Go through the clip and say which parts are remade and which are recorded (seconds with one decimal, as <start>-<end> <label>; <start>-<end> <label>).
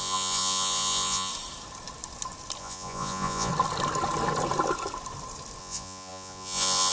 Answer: 0.0-1.3 remade; 1.3-2.6 recorded; 2.6-3.5 remade; 3.5-5.6 recorded; 5.6-6.9 remade